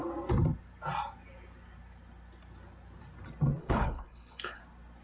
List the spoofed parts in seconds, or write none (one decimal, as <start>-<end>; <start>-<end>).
3.6-4.6